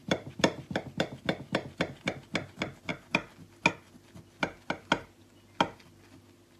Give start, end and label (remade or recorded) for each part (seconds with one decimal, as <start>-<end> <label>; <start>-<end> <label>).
0.0-0.8 remade; 0.8-6.6 recorded